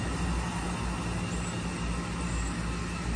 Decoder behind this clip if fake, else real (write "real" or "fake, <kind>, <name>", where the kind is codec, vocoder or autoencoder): real